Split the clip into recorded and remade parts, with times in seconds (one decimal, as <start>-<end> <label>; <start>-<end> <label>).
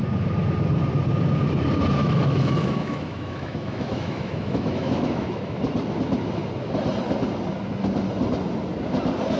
0.0-2.0 recorded; 2.0-5.6 remade; 5.6-9.4 recorded